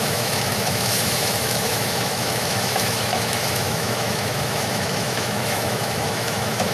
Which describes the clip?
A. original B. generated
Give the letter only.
B